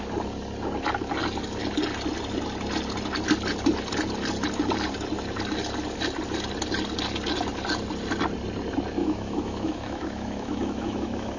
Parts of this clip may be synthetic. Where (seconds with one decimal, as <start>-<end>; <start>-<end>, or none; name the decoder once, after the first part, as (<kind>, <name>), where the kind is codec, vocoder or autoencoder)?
9.0-11.4 (autoencoder, DAC-VAE)